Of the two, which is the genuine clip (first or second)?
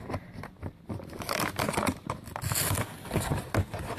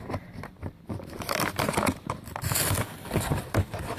first